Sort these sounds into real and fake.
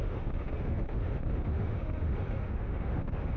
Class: fake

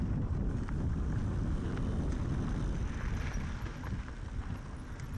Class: real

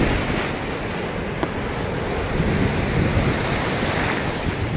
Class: real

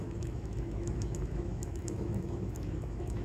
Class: fake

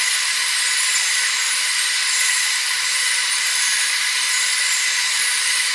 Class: real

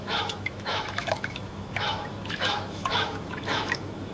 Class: fake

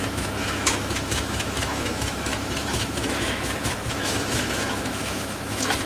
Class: fake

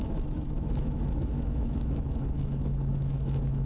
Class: fake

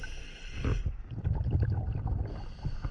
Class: real